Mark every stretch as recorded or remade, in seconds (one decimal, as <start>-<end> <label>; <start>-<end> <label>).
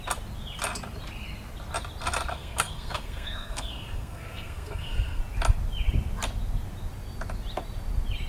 0.0-2.3 recorded; 2.3-5.2 remade; 5.2-8.3 recorded